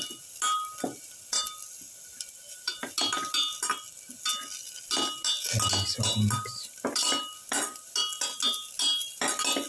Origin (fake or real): real